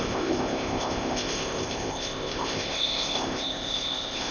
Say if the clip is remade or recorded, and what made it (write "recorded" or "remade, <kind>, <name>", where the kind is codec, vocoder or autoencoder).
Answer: remade, codec, ZipCodec